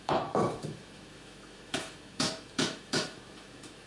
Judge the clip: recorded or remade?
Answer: remade